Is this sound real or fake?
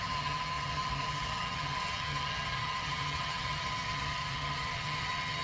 fake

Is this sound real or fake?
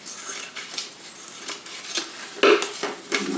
real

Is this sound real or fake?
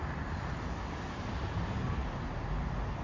fake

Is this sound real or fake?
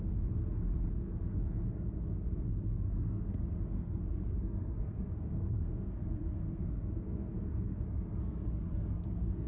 fake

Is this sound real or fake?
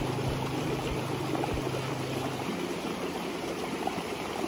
real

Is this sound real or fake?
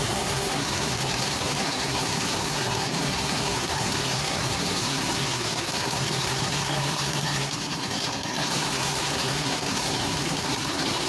fake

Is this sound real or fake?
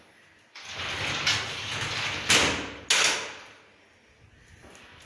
real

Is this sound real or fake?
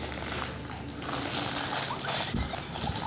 real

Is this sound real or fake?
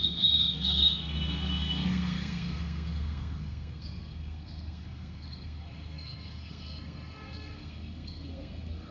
fake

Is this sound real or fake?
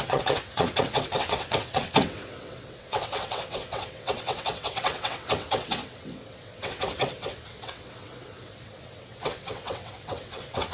fake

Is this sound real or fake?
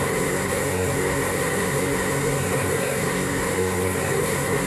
fake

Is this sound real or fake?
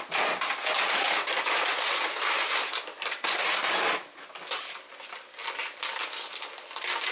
real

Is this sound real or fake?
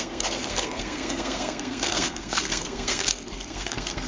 fake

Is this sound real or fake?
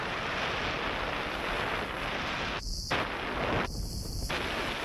real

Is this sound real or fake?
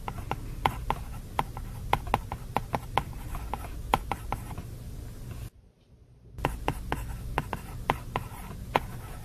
real